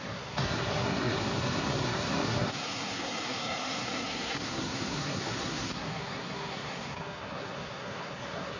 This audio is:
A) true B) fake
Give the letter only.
B